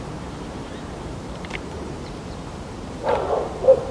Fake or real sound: fake